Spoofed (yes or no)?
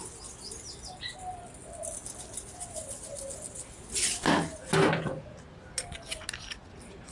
no